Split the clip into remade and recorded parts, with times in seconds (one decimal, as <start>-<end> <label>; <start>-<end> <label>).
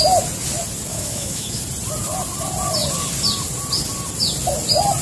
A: 0.0-0.9 recorded; 0.9-1.6 remade; 1.6-5.0 recorded